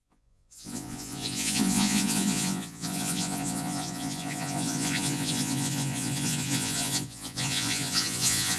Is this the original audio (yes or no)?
no